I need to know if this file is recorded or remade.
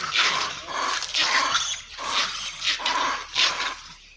recorded